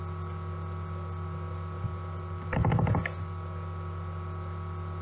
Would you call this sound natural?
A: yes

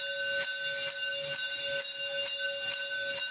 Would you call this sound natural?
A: yes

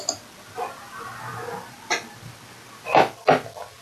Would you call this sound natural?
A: yes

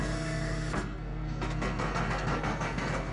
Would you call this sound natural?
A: no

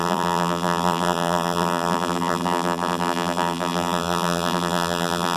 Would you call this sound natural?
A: no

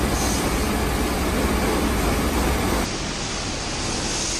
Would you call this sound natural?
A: yes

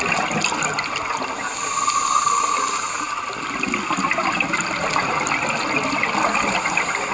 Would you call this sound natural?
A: yes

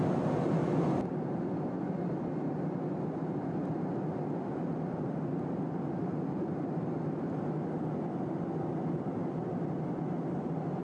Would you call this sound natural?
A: yes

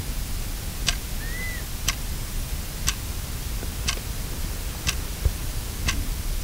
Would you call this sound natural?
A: yes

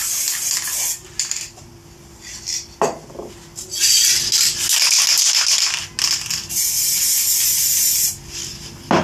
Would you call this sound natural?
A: yes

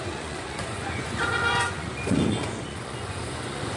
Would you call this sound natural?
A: no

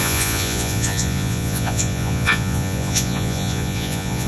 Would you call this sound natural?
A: no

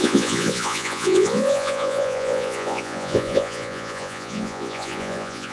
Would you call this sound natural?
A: no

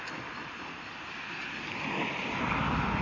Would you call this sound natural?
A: yes